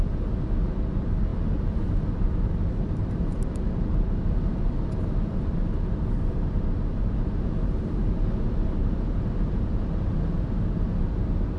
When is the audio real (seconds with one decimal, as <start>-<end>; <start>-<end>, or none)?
0.0-11.6